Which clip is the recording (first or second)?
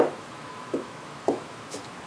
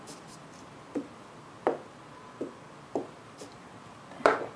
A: second